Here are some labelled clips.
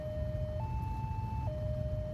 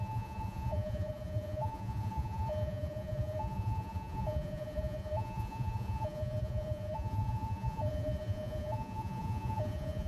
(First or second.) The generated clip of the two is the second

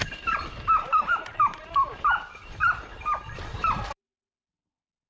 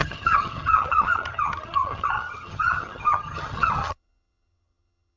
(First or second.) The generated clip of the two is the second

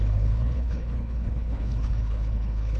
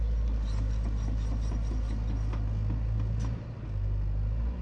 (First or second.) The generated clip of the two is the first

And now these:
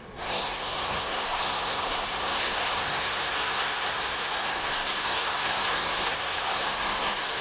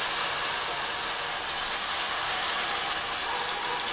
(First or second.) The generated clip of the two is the first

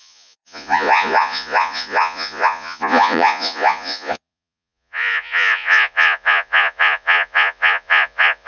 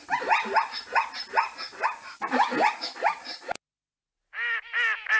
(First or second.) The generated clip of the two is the first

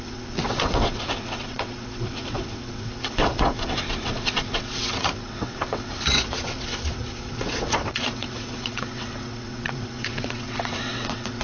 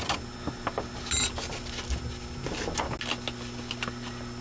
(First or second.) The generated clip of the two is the first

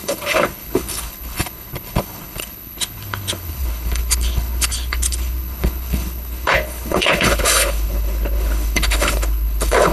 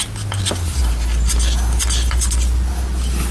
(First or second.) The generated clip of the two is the first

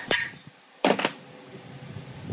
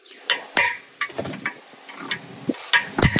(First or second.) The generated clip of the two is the first